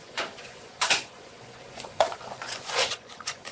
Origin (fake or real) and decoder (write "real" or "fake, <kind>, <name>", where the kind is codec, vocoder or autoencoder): fake, vocoder, Vocos